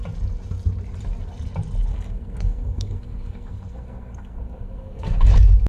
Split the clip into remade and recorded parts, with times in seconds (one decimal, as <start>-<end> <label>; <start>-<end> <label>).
0.0-1.9 recorded; 1.9-5.3 remade; 5.3-5.7 recorded